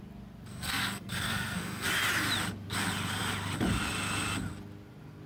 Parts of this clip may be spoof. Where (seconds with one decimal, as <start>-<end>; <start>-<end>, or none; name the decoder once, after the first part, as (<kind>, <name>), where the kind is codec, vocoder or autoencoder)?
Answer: 0.5-1.9 (codec, SNAC)